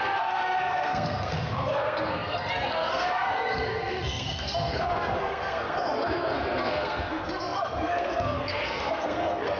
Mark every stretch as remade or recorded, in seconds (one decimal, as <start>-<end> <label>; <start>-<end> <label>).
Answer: 0.0-9.6 remade